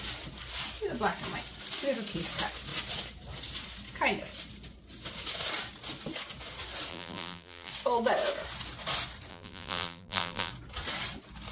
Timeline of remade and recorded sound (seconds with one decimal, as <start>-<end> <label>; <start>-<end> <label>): 0.0-6.9 recorded; 6.9-7.7 remade; 7.7-9.3 recorded; 9.3-10.5 remade; 10.5-11.5 recorded